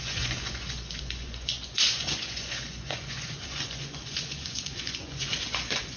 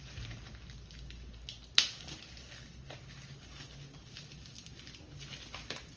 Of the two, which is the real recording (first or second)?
second